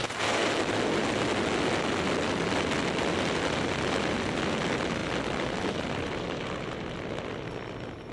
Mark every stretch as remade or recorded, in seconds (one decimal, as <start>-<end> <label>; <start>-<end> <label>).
0.0-8.1 recorded